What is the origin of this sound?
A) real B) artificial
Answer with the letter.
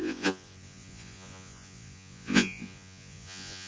B